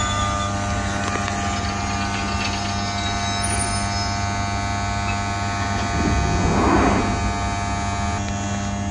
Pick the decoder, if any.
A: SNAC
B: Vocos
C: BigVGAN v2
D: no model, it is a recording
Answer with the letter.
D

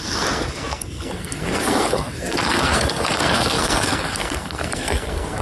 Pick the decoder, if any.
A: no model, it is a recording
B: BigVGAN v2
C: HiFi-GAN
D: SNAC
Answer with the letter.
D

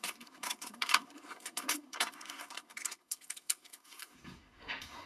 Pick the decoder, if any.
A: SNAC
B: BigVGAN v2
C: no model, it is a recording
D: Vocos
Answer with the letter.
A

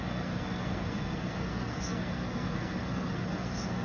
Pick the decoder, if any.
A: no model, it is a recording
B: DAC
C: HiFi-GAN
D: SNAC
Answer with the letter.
D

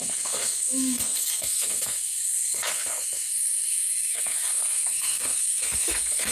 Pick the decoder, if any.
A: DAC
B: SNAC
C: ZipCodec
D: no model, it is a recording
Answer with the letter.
B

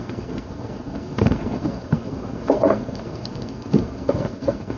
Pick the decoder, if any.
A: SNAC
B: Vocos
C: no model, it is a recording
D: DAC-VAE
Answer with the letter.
A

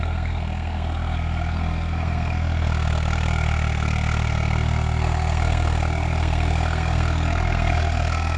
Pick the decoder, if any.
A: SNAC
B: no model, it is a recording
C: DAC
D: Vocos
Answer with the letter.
A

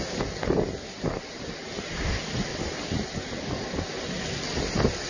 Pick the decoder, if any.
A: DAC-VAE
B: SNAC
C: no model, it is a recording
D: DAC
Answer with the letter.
C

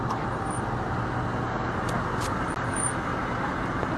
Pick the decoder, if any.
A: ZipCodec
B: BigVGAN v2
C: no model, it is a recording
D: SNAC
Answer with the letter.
C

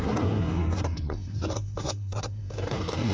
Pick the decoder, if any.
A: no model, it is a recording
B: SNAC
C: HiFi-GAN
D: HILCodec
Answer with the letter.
B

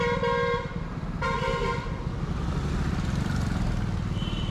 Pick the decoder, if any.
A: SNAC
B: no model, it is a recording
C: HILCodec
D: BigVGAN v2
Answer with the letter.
B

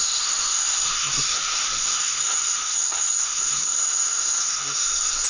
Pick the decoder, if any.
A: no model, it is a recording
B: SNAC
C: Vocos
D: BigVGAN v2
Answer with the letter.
B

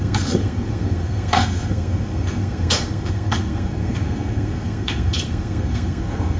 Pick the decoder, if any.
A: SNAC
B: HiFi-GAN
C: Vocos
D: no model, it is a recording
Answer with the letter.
A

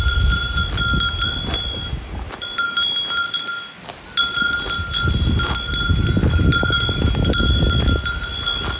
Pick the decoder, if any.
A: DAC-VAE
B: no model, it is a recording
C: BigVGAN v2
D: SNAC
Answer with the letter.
B